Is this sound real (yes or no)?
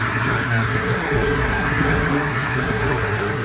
no